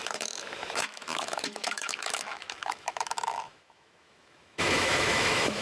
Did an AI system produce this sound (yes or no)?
yes